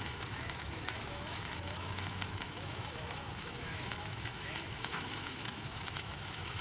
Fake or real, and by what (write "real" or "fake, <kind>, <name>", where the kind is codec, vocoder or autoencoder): fake, autoencoder, DAC-VAE